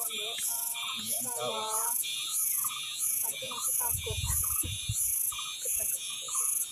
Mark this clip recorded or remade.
remade